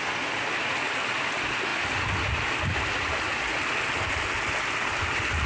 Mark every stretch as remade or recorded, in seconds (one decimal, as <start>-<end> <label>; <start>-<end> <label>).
0.0-5.5 recorded